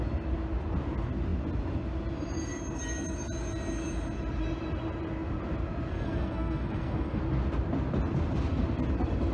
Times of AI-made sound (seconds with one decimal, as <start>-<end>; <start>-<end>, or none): 5.9-7.2